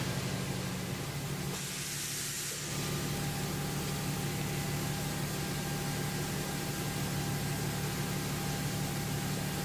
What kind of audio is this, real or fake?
real